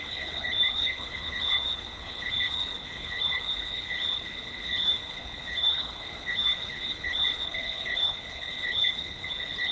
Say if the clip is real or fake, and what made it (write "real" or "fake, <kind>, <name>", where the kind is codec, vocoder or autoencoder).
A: fake, codec, HILCodec